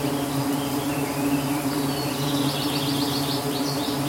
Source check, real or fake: real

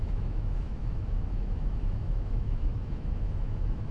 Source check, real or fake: fake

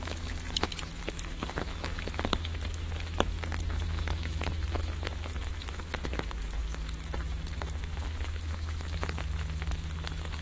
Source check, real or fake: fake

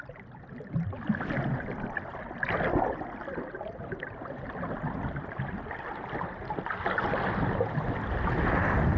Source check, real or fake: real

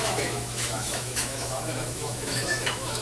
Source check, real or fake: fake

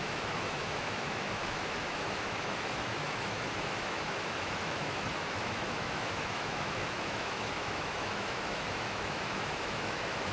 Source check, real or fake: fake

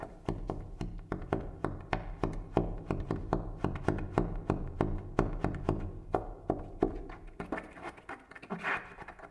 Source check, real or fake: real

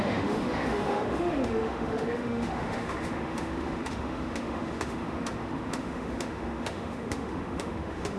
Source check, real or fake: fake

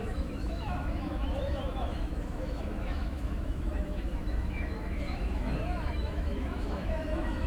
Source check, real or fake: fake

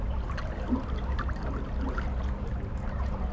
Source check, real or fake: real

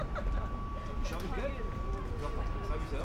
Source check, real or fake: real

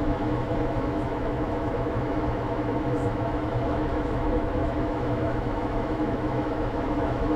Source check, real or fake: fake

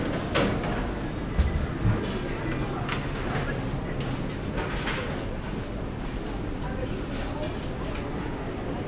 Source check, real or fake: real